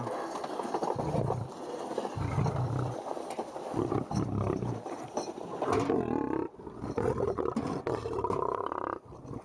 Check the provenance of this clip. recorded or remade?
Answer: recorded